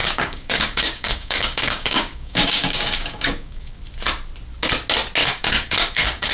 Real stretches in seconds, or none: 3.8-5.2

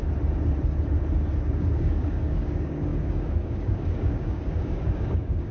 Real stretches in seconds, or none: 0.0-1.5

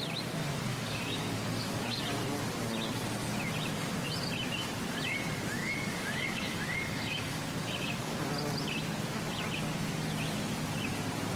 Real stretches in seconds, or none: 0.0-0.7; 2.0-5.6; 8.2-11.4

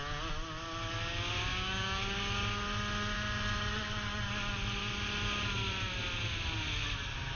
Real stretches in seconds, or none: 0.0-1.5; 2.0-7.4

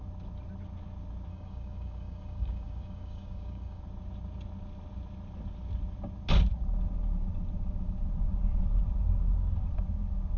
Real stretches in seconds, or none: 0.0-1.3; 3.8-10.4

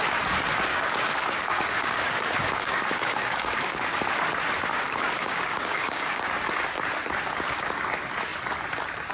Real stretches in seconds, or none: 0.0-0.7; 4.0-4.7; 6.3-9.1